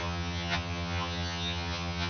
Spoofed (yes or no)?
yes